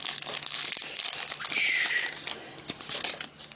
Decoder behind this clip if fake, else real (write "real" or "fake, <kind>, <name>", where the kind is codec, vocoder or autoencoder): real